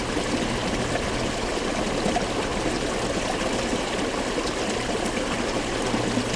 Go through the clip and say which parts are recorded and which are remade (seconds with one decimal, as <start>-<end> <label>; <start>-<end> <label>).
0.0-6.4 recorded